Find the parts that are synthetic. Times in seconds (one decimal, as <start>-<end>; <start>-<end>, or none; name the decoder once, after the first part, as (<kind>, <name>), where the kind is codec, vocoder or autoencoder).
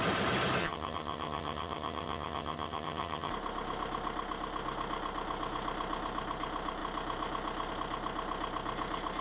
0.6-3.3 (vocoder, HiFi-GAN)